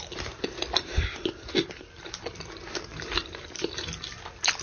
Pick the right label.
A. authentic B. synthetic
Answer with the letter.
A